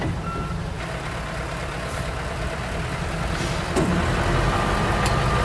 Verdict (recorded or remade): recorded